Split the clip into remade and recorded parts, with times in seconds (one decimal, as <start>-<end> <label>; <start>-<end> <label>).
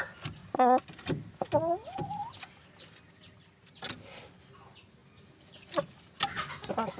0.0-7.0 recorded